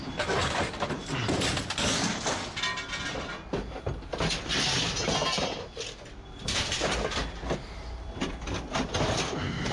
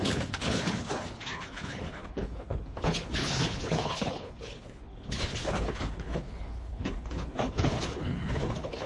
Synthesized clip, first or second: second